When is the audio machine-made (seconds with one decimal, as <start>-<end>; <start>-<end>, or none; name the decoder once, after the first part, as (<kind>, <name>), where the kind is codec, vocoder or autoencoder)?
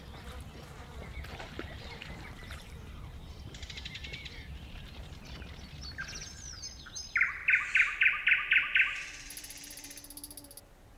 1.3-5.4 (vocoder, BigVGAN v2)